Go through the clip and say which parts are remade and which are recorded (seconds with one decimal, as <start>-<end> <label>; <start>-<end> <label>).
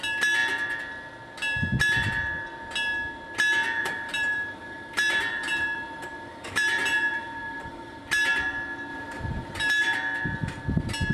0.0-3.8 recorded; 3.8-8.0 remade; 8.0-8.9 recorded; 8.9-9.7 remade; 9.7-11.1 recorded